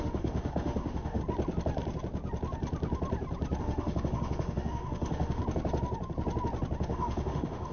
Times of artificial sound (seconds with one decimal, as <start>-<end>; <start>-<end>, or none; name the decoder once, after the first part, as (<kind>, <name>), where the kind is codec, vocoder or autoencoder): 0.0-1.2 (autoencoder, DAC-VAE); 3.6-5.4; 6.8-7.7